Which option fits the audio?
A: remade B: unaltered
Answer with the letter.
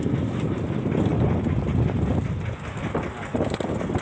B